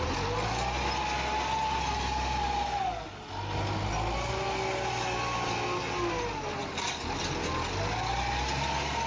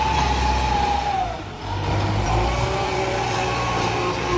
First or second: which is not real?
second